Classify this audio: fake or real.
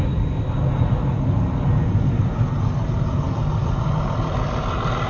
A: real